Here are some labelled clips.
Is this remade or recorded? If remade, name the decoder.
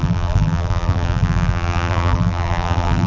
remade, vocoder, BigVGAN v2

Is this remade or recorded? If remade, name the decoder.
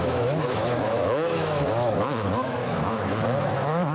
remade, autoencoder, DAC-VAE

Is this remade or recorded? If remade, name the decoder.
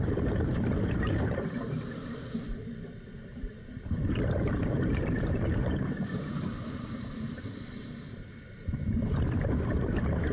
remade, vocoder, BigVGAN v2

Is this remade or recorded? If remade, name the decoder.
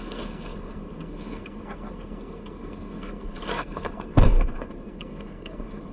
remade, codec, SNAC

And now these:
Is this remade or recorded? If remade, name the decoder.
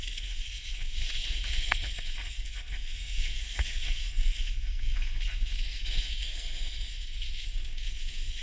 remade, codec, SNAC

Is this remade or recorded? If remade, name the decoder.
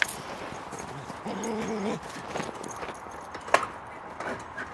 recorded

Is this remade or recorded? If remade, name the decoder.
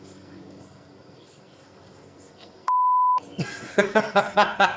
remade, codec, SNAC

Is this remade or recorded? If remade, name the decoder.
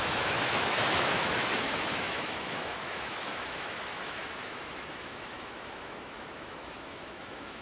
remade, autoencoder, DAC-VAE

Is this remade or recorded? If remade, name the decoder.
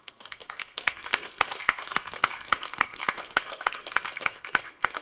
remade, codec, SNAC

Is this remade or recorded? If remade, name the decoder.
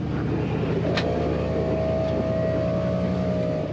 recorded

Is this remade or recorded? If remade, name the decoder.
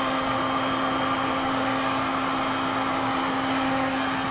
recorded